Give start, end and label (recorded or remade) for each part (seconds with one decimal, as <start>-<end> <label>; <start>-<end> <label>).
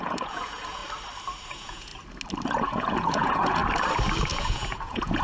0.0-0.8 remade; 0.8-1.5 recorded; 1.5-1.9 remade; 1.9-2.5 recorded; 2.5-3.6 remade; 3.6-4.3 recorded; 4.3-5.2 remade